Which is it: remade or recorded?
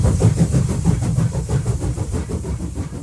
remade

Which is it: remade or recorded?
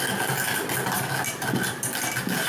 recorded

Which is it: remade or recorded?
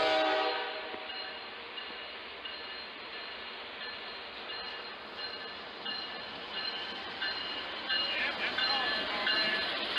recorded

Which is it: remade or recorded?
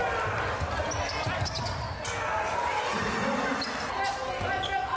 recorded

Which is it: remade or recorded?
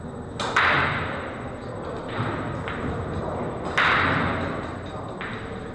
recorded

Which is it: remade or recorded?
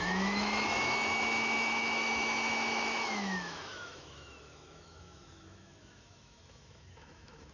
remade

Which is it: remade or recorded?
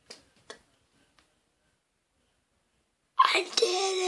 recorded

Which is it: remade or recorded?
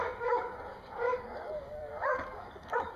remade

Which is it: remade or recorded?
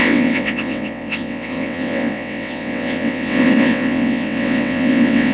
remade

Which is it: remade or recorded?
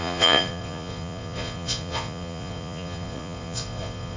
remade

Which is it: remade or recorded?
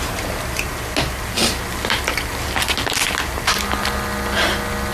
recorded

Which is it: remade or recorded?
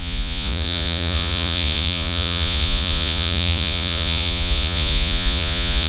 remade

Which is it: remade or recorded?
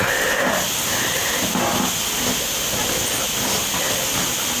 recorded